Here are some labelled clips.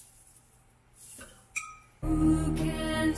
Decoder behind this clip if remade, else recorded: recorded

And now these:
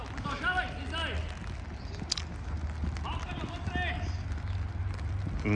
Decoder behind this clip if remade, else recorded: recorded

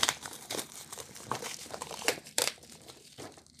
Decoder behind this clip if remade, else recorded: remade, vocoder, BigVGAN v2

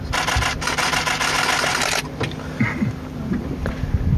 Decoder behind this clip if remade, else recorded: recorded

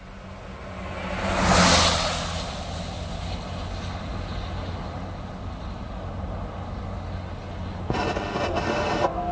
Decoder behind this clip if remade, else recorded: recorded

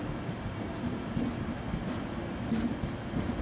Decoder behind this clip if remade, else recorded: recorded